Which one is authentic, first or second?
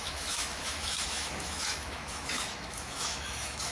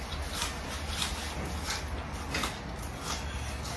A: second